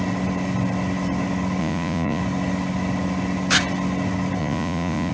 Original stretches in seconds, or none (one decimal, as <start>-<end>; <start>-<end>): 0.0-1.6; 2.2-4.4